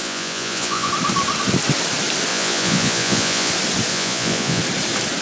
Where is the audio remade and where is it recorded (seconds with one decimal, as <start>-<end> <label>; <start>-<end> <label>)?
0.0-0.9 remade; 0.9-2.3 recorded; 2.3-3.5 remade; 3.5-3.9 recorded; 3.9-4.6 remade; 4.6-5.2 recorded